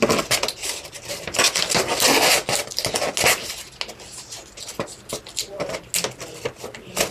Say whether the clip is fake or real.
real